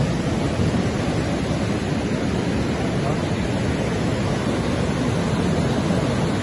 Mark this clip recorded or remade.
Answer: recorded